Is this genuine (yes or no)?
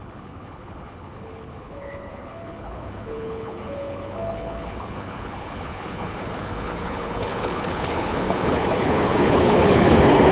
no